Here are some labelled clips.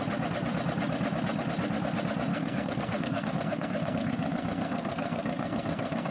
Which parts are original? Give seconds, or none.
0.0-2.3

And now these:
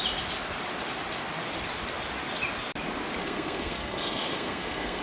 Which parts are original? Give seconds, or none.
0.0-3.2

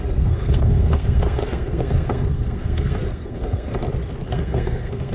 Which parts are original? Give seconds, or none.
3.7-4.3